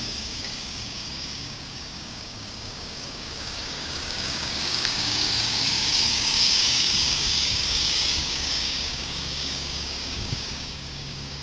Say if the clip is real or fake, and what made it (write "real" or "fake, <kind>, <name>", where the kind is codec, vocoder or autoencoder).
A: fake, codec, DAC